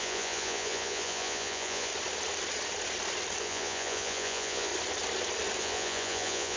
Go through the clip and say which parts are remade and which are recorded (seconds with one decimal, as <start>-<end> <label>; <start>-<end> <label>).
0.0-1.9 remade; 1.9-3.4 recorded; 3.4-4.7 remade; 4.7-5.6 recorded; 5.6-6.6 remade